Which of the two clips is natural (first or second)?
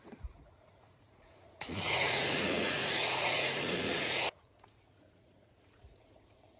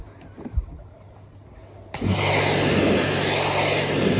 second